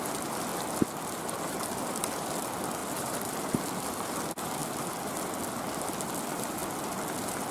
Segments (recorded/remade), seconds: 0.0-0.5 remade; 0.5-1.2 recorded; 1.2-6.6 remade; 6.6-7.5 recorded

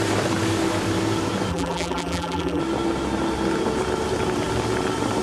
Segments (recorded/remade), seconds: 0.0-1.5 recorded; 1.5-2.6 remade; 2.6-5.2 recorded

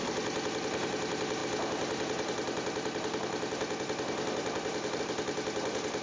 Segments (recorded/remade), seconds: 0.0-6.0 remade

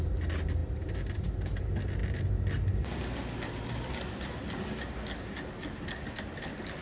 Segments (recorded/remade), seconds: 0.0-6.8 recorded

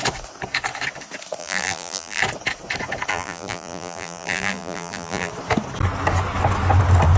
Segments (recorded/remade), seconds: 0.0-1.4 recorded; 1.4-2.2 remade; 2.2-3.1 recorded; 3.1-5.3 remade; 5.3-7.2 recorded